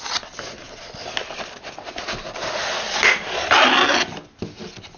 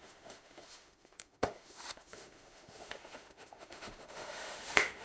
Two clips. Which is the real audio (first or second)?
first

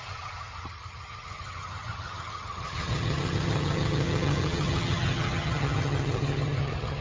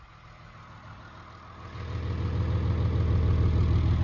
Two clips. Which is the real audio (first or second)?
second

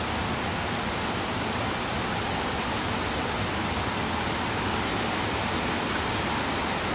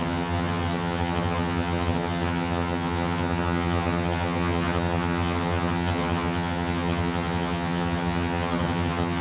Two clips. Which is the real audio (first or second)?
first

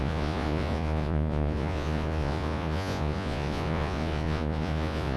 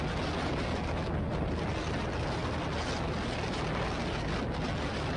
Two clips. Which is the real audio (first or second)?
second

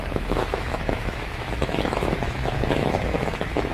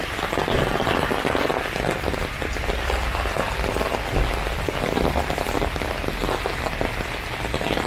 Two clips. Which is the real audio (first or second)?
second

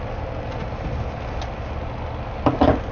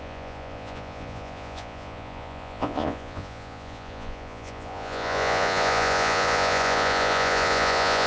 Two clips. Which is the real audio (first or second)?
first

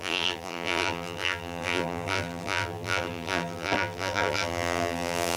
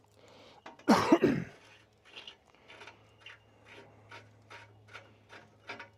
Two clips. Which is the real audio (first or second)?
second